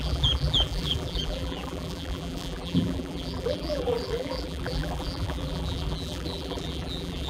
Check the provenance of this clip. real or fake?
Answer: fake